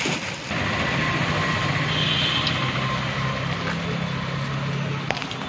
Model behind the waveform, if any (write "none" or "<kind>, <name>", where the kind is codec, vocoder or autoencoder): none